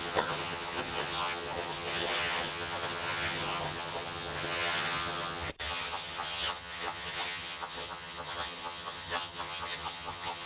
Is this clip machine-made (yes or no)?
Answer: yes